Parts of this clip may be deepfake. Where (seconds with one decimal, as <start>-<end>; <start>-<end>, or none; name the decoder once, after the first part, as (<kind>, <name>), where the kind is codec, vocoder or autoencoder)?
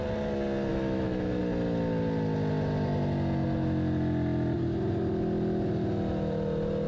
0.7-1.4 (autoencoder, DAC-VAE)